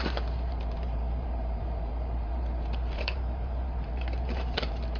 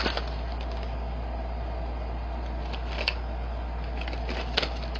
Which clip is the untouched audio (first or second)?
second